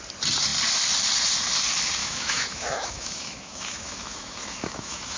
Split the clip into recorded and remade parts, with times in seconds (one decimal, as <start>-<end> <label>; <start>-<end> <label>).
0.0-2.0 recorded; 2.0-5.2 remade